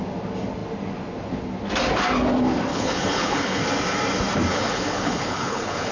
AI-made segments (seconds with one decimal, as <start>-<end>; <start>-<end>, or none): 2.7-3.6; 4.5-5.9